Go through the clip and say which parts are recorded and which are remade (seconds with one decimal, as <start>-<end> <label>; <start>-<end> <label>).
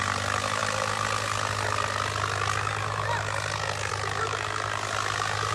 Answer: 0.0-5.5 recorded